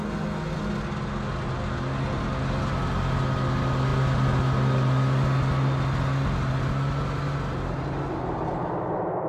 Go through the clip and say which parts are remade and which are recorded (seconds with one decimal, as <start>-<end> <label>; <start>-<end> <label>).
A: 0.0-9.3 recorded